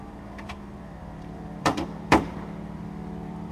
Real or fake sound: fake